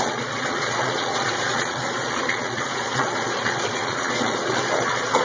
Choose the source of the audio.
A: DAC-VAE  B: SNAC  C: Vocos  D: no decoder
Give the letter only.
C